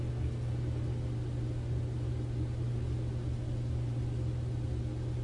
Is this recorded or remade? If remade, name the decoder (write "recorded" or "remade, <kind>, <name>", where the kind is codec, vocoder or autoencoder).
recorded